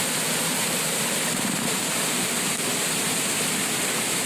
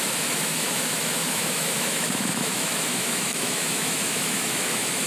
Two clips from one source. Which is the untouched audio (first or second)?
first